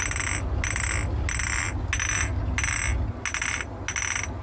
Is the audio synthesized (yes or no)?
no